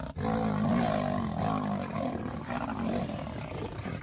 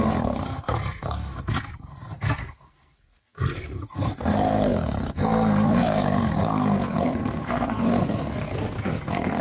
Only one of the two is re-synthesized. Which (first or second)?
second